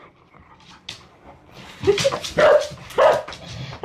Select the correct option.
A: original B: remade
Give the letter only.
A